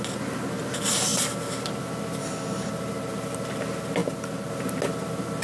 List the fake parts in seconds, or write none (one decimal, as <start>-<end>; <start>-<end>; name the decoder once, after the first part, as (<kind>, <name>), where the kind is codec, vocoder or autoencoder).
2.2-2.7 (codec, DAC)